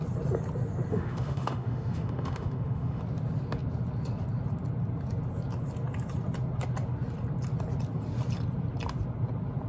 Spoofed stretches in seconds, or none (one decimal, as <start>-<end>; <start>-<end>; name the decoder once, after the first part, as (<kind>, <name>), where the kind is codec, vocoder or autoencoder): 0.9-3.0 (autoencoder, DAC-VAE)